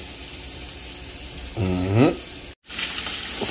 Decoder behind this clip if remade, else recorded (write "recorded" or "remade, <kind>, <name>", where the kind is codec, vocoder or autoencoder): recorded